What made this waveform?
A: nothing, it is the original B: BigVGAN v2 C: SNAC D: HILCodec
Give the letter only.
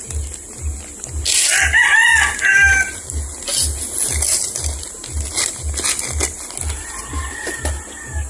A